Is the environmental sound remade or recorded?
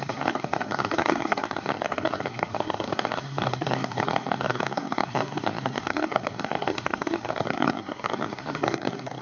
remade